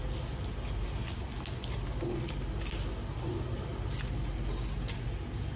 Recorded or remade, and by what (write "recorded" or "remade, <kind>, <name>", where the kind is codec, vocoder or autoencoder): recorded